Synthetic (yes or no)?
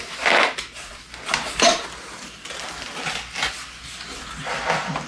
no